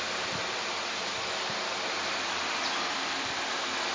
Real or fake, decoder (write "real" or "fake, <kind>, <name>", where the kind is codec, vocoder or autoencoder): real